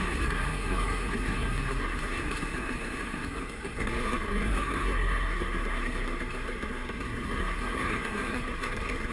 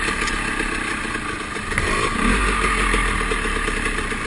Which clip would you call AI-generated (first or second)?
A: first